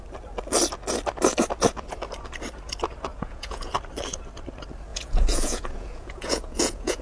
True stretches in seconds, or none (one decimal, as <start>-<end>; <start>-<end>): 0.0-3.1; 3.7-4.9